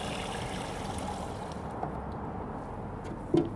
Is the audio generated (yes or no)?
no